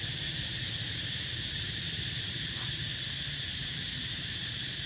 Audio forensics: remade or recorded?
remade